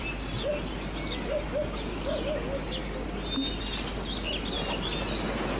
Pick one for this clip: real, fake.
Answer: real